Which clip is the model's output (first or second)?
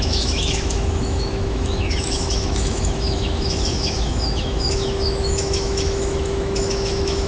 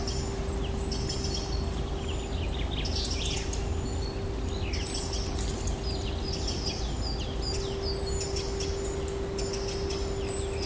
first